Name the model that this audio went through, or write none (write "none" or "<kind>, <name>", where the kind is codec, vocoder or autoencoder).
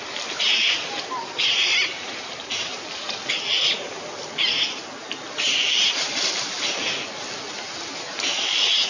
none